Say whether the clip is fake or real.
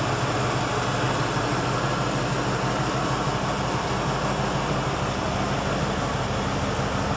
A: real